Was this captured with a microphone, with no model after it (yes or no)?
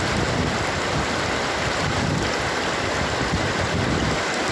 yes